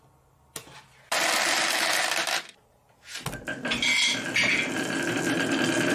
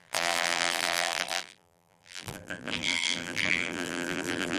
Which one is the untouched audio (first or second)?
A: first